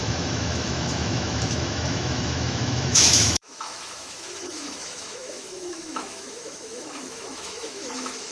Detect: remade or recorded remade